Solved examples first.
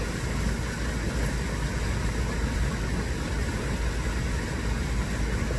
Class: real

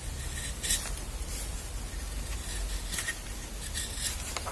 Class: real